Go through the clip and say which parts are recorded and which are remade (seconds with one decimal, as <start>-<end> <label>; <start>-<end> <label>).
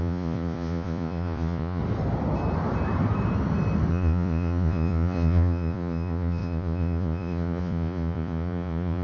0.0-1.8 remade; 1.8-3.9 recorded; 3.9-9.0 remade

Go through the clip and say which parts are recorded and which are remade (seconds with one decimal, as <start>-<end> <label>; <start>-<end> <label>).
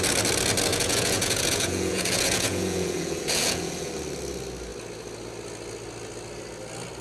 0.0-0.7 recorded; 0.7-3.9 remade; 3.9-7.0 recorded